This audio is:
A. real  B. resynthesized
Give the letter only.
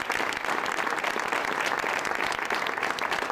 A